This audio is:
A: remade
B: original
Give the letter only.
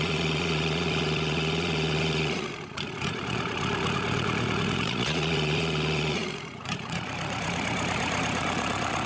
A